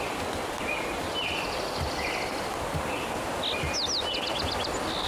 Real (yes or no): yes